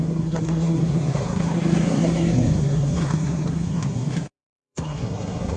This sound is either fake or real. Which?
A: fake